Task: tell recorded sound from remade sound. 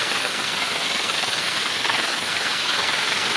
remade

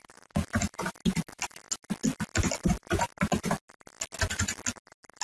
recorded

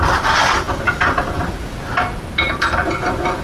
recorded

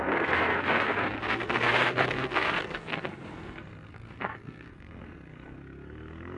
remade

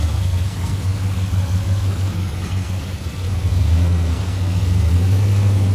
remade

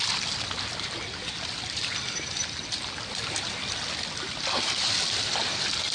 recorded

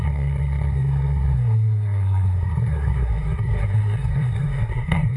remade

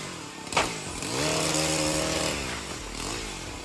recorded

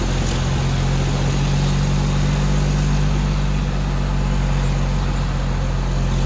recorded